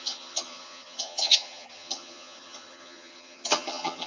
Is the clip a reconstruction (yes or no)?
yes